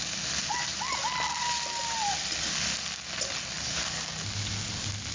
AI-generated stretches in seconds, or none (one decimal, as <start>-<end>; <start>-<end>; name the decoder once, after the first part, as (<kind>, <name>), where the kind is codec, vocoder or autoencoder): none

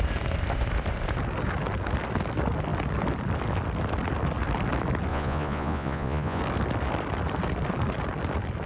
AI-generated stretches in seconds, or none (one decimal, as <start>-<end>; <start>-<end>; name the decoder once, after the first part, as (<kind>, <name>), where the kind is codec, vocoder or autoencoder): 5.1-6.4 (vocoder, Vocos)

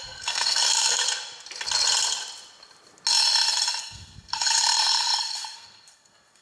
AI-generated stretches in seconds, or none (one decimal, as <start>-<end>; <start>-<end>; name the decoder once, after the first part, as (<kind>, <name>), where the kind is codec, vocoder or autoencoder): 0.0-1.0 (codec, SNAC); 3.8-6.4

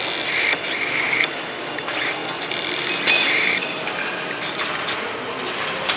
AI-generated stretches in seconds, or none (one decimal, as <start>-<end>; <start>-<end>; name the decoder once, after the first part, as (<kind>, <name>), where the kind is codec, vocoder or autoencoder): 2.2-6.0 (vocoder, BigVGAN v2)

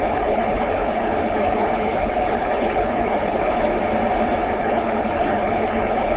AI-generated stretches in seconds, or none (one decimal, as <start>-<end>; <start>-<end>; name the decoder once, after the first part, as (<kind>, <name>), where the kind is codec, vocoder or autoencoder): 0.0-3.7 (codec, HILCodec); 4.5-6.2

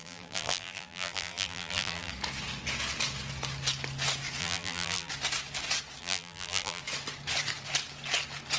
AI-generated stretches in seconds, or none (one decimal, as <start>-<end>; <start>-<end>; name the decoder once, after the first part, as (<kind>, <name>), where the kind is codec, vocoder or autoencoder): 0.0-2.1 (vocoder, BigVGAN v2); 4.4-5.1; 6.0-6.8